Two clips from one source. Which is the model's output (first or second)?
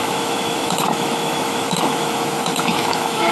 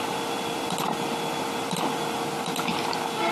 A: first